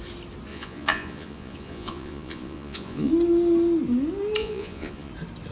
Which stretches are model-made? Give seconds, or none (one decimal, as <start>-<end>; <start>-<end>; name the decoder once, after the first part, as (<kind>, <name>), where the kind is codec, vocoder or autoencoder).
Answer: 0.5-3.1 (vocoder, Vocos); 4.4-5.1